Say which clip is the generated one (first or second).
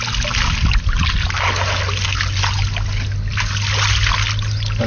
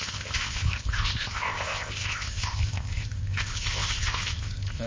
second